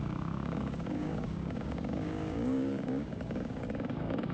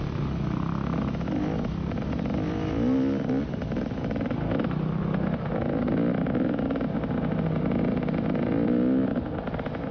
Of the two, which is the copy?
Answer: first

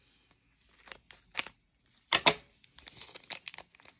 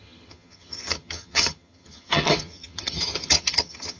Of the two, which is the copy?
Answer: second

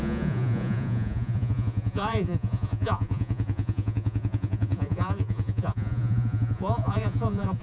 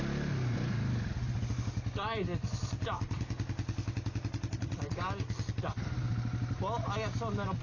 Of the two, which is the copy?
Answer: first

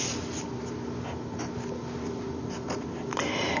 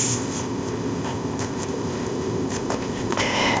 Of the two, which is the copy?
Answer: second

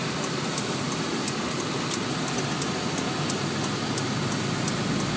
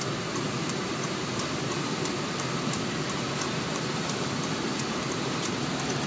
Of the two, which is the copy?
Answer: second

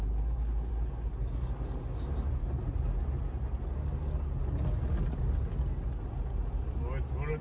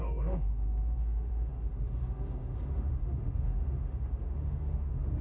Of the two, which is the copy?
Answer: second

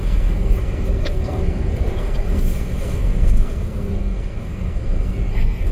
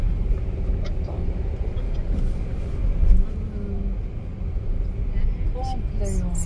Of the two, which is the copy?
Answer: first